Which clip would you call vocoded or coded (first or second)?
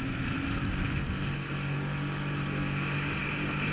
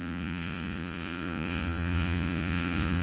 second